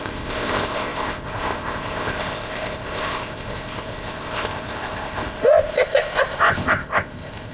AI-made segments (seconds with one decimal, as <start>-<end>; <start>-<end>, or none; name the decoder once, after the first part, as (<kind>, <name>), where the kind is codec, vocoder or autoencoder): 0.0-7.5 (codec, ZipCodec)